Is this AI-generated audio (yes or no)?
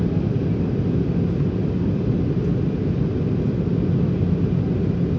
no